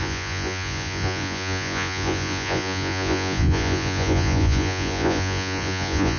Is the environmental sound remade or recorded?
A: remade